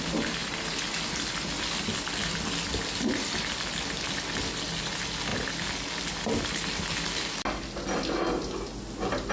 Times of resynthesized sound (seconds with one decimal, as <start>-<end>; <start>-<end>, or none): none

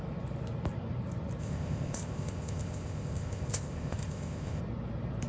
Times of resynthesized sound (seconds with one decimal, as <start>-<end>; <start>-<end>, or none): 1.4-4.6